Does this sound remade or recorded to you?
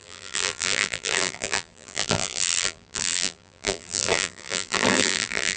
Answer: remade